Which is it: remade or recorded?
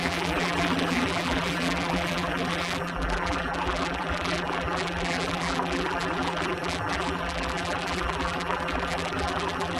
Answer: remade